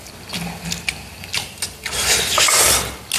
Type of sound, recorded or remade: recorded